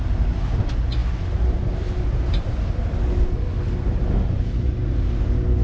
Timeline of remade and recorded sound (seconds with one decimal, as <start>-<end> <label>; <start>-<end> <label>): 0.0-5.6 recorded

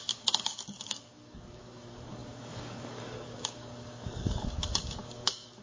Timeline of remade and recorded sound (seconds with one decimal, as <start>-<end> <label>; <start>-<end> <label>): 0.0-5.6 remade

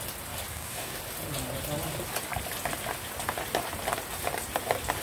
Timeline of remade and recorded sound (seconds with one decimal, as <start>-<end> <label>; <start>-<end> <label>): 0.0-0.5 recorded; 0.5-1.0 remade; 1.0-5.0 recorded

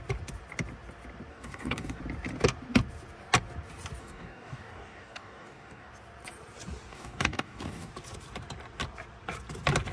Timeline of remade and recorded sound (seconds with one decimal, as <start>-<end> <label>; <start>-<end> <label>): 0.0-1.3 recorded; 1.3-2.0 remade; 2.0-4.0 recorded; 4.0-5.9 remade; 5.9-6.9 recorded; 6.9-7.9 remade; 7.9-9.9 recorded

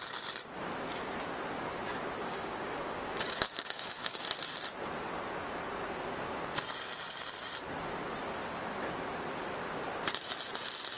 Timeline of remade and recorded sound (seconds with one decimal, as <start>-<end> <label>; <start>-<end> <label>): 0.0-2.2 recorded; 2.2-4.2 remade; 4.2-11.0 recorded

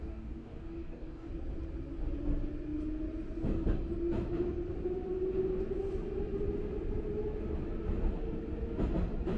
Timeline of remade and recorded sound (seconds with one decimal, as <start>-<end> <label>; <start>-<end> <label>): 0.0-1.3 remade; 1.3-9.4 recorded

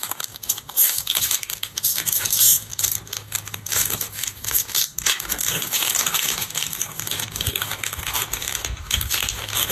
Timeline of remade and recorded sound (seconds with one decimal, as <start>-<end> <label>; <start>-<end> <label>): 0.0-9.7 remade